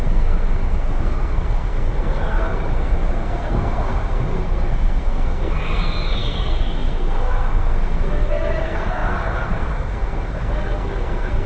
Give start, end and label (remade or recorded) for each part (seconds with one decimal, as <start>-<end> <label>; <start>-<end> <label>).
0.0-11.5 remade